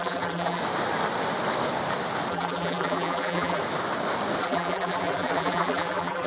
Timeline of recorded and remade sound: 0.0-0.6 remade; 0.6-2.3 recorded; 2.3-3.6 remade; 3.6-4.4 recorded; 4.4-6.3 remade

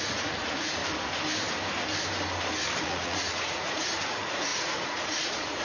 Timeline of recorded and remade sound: 0.0-0.8 remade; 0.8-2.8 recorded; 2.8-5.6 remade

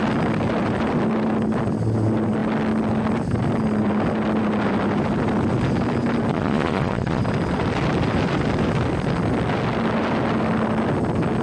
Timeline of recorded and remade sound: 0.0-6.3 recorded; 6.3-7.2 remade; 7.2-11.4 recorded

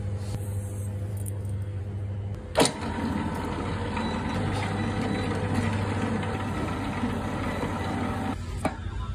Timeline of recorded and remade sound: 0.0-1.1 recorded; 1.1-1.8 remade; 1.8-9.1 recorded

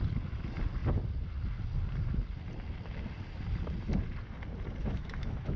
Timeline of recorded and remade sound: 0.0-4.8 recorded; 4.8-5.6 remade

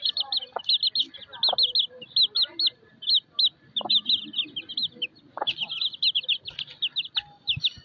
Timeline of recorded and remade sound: 0.0-7.8 recorded